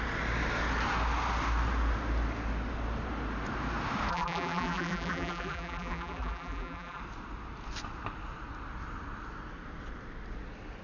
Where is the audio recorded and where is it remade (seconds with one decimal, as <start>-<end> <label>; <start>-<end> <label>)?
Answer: 0.0-4.1 recorded; 4.1-7.0 remade; 7.0-10.8 recorded